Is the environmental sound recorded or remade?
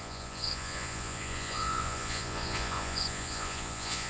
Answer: remade